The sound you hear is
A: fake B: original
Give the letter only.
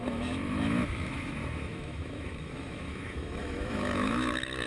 A